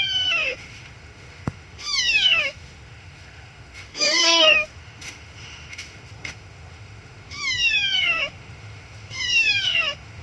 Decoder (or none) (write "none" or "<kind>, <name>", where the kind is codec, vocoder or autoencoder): autoencoder, DAC-VAE